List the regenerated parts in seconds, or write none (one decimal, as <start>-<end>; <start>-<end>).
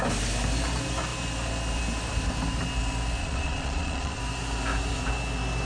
3.2-4.2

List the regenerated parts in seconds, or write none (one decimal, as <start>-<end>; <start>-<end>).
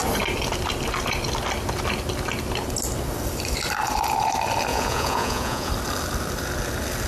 4.7-5.7